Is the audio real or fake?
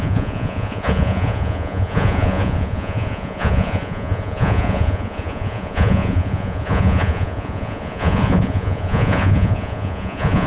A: fake